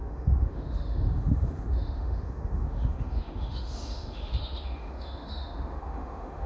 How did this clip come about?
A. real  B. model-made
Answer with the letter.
B